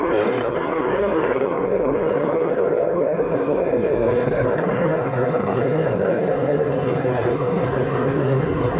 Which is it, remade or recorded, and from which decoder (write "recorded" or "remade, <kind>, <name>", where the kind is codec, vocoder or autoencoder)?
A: remade, codec, SNAC